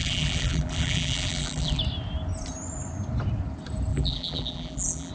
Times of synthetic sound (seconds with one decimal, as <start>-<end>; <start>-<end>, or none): 0.0-1.8; 3.9-5.1